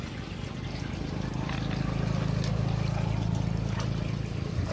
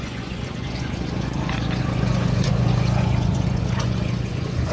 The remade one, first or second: second